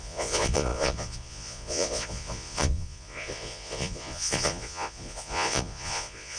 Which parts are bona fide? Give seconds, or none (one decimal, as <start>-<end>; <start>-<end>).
none